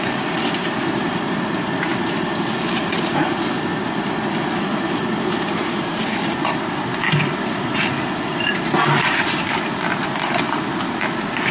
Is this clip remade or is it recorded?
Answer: remade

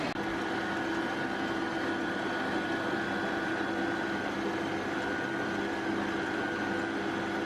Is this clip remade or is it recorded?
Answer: recorded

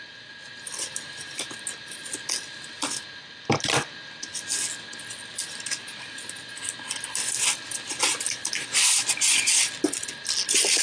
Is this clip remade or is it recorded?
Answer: recorded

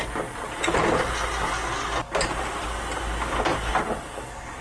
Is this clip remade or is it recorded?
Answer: recorded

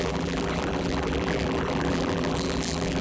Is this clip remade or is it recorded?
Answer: remade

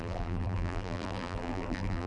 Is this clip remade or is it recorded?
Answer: remade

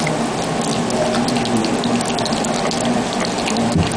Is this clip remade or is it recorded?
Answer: recorded